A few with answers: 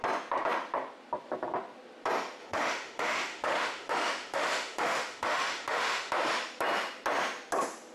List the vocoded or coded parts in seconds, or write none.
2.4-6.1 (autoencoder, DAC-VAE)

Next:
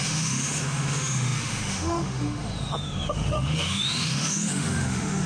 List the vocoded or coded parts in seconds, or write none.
0.0-5.3 (autoencoder, DAC-VAE)

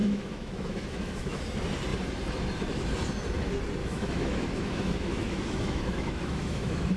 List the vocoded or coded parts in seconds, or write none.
0.0-1.4 (autoencoder, DAC-VAE); 3.8-7.0

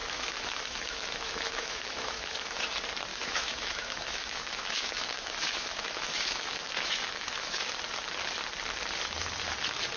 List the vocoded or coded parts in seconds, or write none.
0.0-2.6 (autoencoder, DAC-VAE); 3.1-7.6